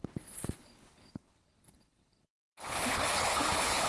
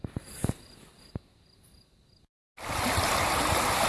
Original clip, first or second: second